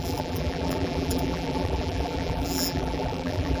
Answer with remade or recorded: remade